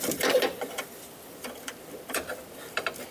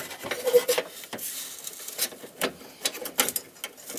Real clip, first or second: second